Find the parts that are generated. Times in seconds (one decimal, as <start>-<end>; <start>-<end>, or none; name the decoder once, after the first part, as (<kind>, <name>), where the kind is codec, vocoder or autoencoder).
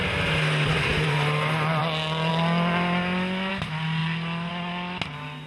none